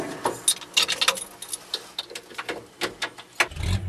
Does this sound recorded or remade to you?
recorded